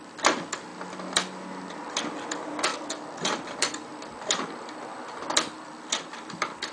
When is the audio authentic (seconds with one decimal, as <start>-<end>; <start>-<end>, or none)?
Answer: 0.7-1.7; 3.9-4.7